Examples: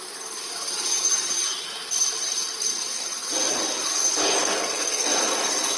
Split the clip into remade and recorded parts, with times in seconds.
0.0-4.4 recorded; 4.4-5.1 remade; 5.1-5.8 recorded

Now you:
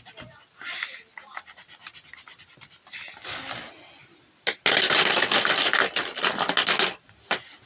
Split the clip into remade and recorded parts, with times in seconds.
0.0-7.7 recorded

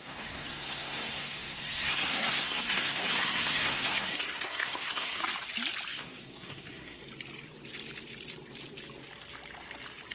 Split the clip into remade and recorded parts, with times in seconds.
0.0-5.2 remade; 5.2-5.9 recorded; 5.9-7.0 remade; 7.0-10.1 recorded

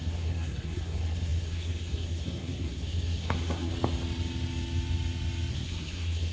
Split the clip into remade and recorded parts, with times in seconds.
0.0-3.7 remade; 3.7-5.5 recorded; 5.5-6.3 remade

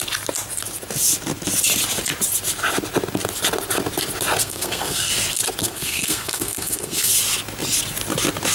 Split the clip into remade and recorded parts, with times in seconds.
0.0-4.4 recorded; 4.4-5.1 remade; 5.1-5.6 recorded; 5.6-7.1 remade; 7.1-8.5 recorded

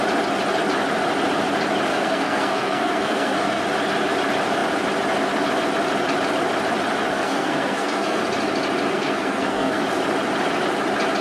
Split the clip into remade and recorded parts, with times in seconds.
0.0-1.9 recorded; 1.9-3.6 remade; 3.6-7.1 recorded; 7.1-8.2 remade; 8.2-8.9 recorded; 8.9-9.8 remade; 9.8-11.2 recorded

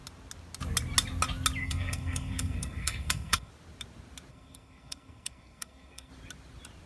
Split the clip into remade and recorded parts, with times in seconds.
0.0-1.6 recorded; 1.6-3.5 remade; 3.5-4.3 recorded; 4.3-6.1 remade; 6.1-6.9 recorded

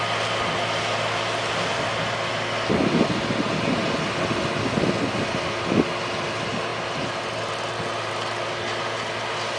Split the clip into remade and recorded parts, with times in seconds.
0.0-9.6 recorded